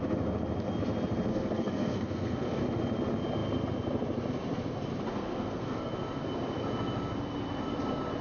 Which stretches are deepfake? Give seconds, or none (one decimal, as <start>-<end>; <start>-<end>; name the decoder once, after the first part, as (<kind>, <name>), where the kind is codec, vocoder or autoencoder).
1.3-2.6 (codec, SNAC); 5.1-5.9